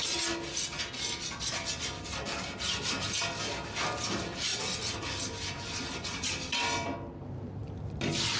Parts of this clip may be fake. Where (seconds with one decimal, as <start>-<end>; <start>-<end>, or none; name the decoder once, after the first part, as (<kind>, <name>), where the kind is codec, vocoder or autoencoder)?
none